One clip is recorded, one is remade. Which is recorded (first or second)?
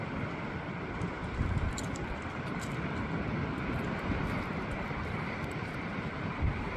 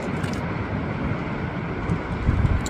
second